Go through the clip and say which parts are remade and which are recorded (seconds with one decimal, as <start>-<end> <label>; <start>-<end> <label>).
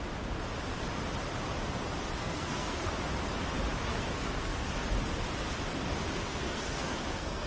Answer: 0.0-2.2 recorded; 2.2-2.9 remade; 2.9-3.9 recorded; 3.9-4.7 remade; 4.7-6.3 recorded; 6.3-7.5 remade